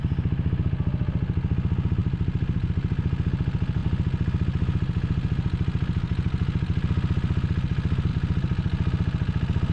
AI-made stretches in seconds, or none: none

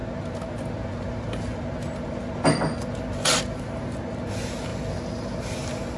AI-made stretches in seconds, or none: none